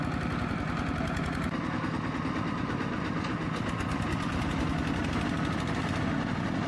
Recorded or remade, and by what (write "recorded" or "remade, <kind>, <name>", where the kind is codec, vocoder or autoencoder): recorded